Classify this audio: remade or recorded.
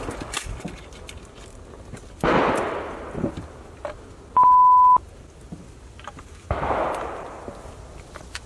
recorded